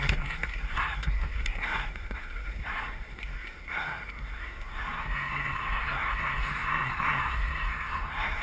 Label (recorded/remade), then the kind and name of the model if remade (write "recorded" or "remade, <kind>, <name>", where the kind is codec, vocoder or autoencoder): remade, codec, SNAC